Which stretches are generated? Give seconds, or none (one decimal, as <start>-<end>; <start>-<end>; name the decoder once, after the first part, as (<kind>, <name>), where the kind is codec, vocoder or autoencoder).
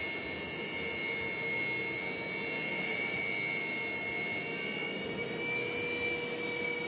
2.7-3.2 (vocoder, BigVGAN v2)